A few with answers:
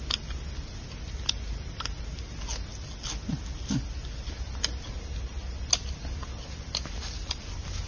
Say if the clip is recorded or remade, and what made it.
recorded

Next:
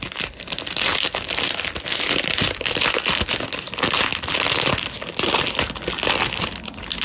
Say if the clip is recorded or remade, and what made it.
recorded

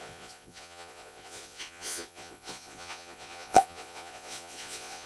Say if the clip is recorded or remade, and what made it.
remade, vocoder, Vocos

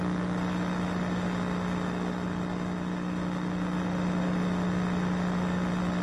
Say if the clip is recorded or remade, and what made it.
recorded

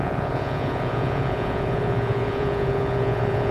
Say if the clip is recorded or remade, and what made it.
remade, vocoder, Vocos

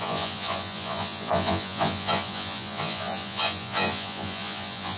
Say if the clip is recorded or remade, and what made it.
remade, vocoder, Vocos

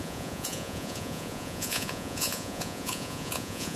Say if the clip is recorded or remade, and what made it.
remade, vocoder, Vocos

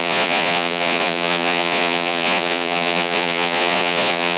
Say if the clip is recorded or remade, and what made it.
remade, vocoder, Vocos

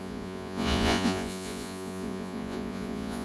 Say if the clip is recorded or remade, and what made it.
remade, vocoder, Vocos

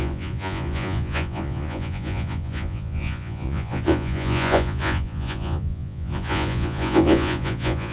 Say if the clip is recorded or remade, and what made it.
remade, vocoder, Vocos